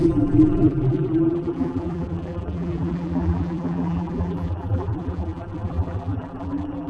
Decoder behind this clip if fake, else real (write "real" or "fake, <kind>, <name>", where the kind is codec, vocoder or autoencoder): fake, vocoder, BigVGAN v2